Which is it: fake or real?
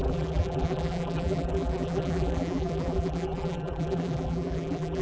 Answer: fake